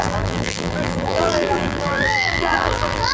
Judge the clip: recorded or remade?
remade